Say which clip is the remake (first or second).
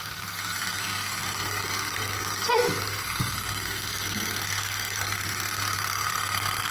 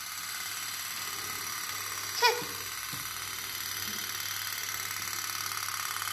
first